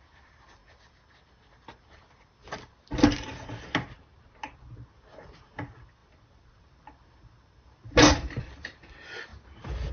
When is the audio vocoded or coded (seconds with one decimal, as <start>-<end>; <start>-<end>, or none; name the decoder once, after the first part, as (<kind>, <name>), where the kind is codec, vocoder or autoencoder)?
0.0-0.6 (vocoder, BigVGAN v2); 5.5-9.3